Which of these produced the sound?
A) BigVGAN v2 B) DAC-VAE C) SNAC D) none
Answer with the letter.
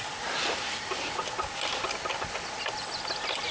D